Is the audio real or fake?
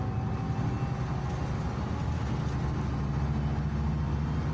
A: real